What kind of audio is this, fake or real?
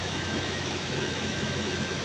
fake